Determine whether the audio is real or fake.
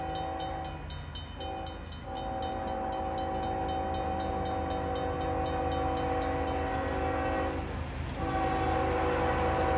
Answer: real